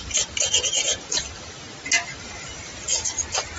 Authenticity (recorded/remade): recorded